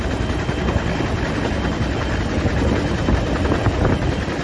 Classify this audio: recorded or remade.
recorded